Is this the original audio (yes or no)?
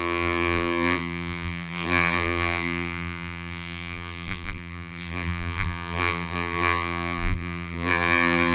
no